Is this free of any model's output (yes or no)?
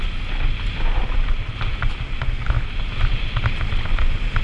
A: yes